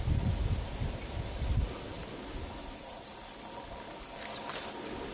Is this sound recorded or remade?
recorded